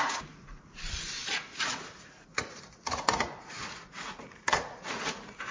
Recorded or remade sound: remade